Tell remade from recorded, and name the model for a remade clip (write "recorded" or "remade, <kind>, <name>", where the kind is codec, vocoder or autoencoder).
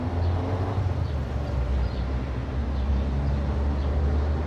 recorded